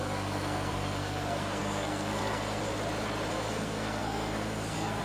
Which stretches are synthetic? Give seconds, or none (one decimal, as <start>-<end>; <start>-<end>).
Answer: 0.0-2.6; 3.3-5.0